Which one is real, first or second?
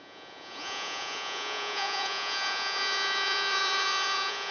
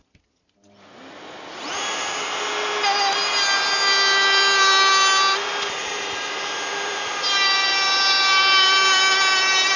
second